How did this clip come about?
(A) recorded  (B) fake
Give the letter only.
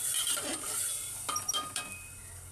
B